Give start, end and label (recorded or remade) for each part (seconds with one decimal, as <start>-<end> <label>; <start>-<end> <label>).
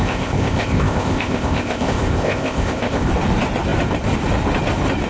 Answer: 0.0-3.1 remade; 3.1-5.1 recorded